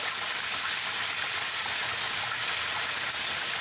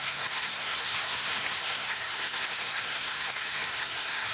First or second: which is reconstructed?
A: second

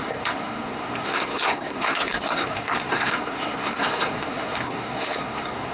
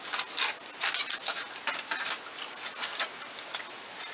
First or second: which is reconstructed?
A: first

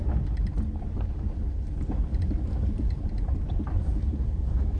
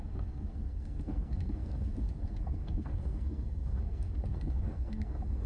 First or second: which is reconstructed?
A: second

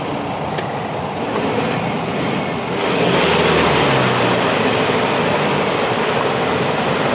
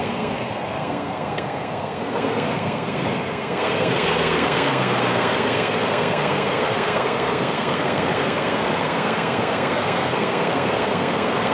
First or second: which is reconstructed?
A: second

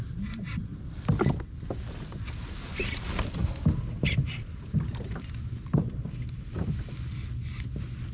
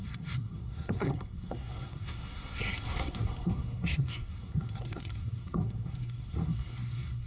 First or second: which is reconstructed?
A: second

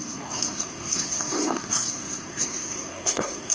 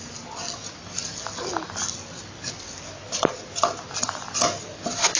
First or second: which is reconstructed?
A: first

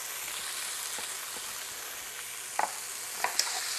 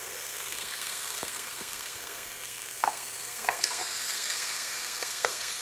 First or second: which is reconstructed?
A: second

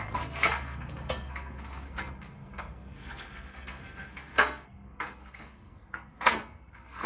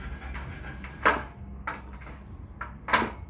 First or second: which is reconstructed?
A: first